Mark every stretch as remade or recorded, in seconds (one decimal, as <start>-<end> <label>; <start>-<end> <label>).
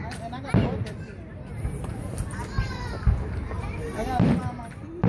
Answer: 0.0-1.3 recorded; 1.3-4.4 remade; 4.4-5.1 recorded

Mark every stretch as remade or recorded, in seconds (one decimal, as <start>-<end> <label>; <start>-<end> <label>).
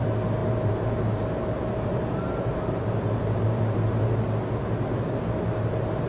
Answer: 0.0-0.4 recorded; 0.4-4.1 remade; 4.1-6.1 recorded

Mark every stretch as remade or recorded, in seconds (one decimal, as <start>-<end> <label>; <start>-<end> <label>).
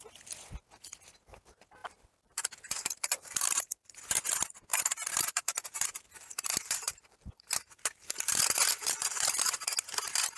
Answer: 0.0-1.8 recorded; 1.8-3.9 remade; 3.9-4.7 recorded; 4.7-9.5 remade; 9.5-10.4 recorded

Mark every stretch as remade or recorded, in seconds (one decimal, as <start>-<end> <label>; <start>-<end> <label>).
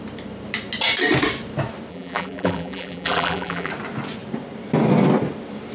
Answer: 0.0-1.9 recorded; 1.9-3.7 remade; 3.7-5.7 recorded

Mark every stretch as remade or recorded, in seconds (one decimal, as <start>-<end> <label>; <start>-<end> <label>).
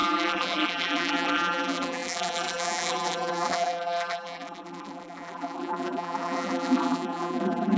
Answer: 0.0-7.8 remade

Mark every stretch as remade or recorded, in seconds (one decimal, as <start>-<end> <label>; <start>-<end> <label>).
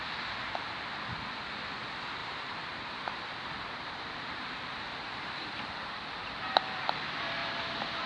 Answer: 0.0-2.2 recorded; 2.2-6.9 remade; 6.9-7.4 recorded; 7.4-8.1 remade